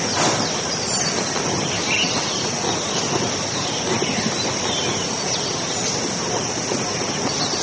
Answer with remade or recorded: recorded